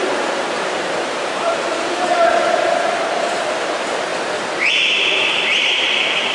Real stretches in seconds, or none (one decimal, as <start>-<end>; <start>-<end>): 4.1-4.7